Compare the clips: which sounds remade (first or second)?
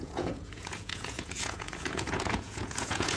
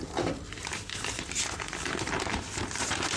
first